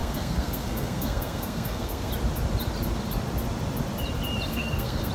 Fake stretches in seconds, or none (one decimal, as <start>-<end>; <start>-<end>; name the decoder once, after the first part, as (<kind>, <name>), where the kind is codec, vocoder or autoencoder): 0.0-2.1 (codec, SNAC); 4.5-5.1